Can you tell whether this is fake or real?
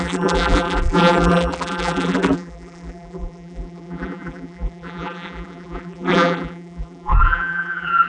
fake